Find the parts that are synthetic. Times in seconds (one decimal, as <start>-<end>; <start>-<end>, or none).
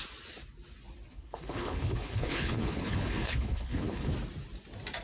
1.1-4.1